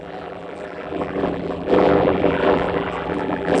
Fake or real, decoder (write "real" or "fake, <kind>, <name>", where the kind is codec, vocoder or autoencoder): fake, vocoder, BigVGAN v2